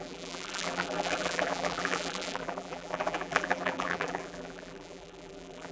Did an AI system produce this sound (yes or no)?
yes